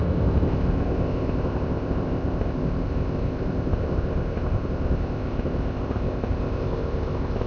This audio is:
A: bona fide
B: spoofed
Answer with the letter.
B